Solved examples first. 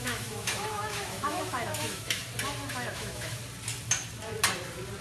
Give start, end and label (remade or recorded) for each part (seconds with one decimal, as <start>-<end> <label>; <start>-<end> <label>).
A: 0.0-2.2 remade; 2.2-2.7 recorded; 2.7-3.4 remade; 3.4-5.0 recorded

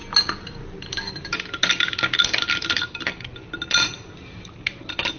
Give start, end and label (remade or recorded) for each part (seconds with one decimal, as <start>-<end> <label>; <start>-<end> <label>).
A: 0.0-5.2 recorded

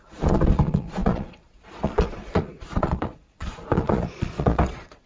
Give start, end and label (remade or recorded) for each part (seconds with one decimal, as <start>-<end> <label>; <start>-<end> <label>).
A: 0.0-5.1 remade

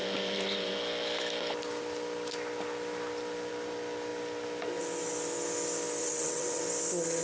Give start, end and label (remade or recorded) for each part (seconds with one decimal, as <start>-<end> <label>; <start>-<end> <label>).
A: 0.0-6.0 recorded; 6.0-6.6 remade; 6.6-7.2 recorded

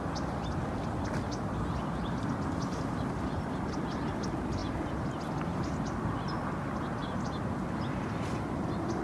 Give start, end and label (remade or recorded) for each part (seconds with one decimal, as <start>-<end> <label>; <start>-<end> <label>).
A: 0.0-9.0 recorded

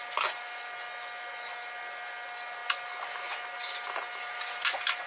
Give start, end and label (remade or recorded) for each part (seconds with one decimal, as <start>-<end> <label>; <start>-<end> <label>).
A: 0.0-5.1 recorded